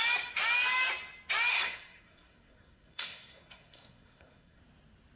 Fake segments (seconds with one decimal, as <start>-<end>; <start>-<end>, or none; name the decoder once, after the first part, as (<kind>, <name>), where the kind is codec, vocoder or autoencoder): 1.5-4.6 (codec, SNAC)